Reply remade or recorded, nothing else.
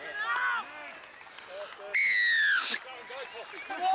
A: recorded